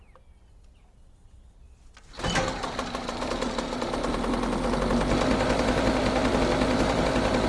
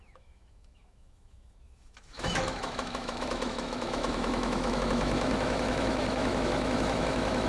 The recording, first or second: first